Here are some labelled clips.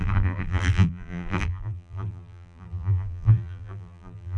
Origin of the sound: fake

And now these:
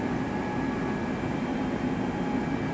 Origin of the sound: real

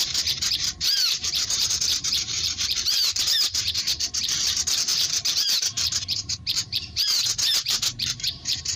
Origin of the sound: fake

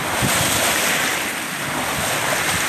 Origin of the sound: fake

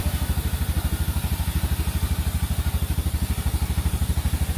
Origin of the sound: fake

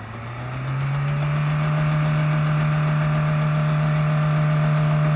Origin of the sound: real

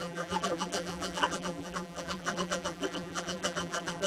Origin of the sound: fake